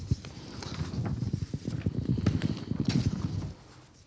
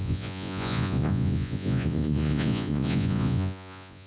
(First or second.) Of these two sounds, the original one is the first